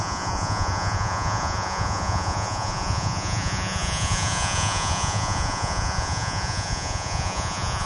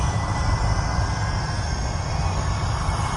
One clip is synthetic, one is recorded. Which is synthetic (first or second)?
first